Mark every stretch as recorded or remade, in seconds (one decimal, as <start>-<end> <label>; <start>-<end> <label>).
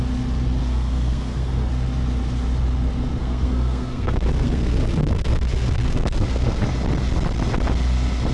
0.0-0.6 recorded; 0.6-1.7 remade; 1.7-3.2 recorded; 3.2-6.7 remade; 6.7-8.3 recorded